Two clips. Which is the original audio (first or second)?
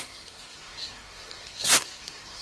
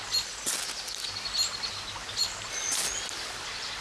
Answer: second